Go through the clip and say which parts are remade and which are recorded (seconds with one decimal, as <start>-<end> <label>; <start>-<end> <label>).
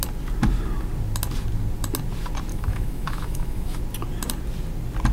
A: 0.0-2.5 recorded; 2.5-3.8 remade; 3.8-5.1 recorded